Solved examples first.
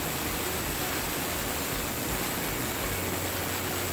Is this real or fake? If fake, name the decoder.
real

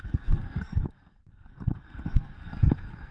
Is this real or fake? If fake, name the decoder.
fake, codec, SNAC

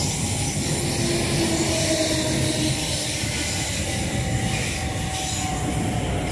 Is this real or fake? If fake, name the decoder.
real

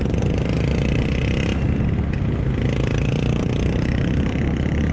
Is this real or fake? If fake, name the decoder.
real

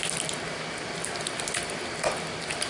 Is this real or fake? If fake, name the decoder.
real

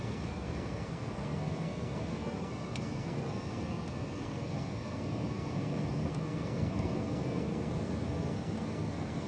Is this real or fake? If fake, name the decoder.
fake, codec, SNAC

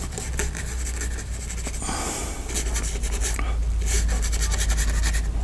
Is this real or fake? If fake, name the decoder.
real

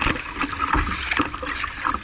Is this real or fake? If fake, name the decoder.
real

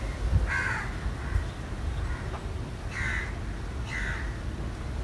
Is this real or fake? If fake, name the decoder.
real